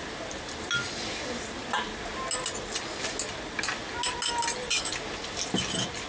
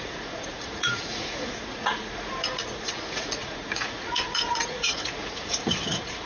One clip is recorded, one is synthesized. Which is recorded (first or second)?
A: first